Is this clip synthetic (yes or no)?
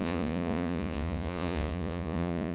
yes